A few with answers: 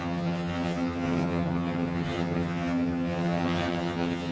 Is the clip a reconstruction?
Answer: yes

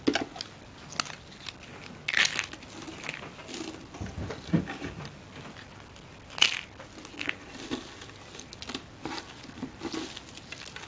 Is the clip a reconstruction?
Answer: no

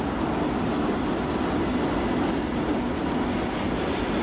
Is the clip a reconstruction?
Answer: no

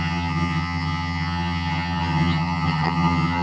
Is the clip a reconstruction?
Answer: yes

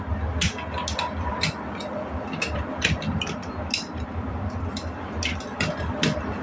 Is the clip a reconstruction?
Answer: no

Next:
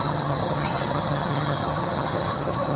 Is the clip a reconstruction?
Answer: yes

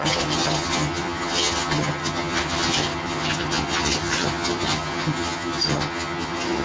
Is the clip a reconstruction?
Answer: yes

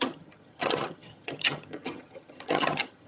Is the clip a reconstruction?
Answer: yes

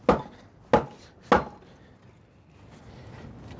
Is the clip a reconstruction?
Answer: no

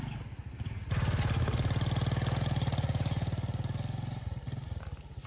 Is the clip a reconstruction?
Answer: no